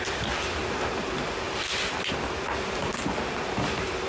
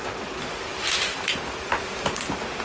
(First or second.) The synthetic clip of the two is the second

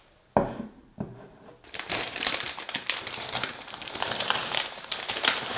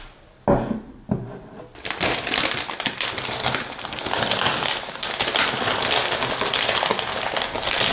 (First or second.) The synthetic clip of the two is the first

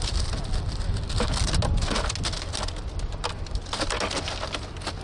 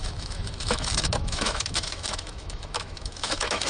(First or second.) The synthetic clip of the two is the second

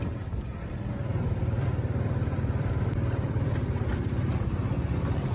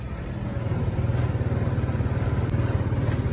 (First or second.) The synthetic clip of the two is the first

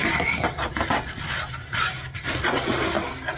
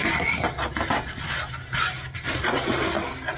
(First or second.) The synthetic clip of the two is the first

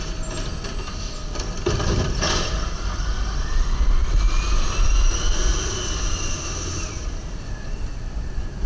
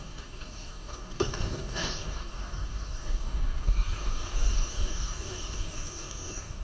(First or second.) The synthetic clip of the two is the second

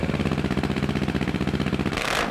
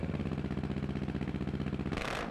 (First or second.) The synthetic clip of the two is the first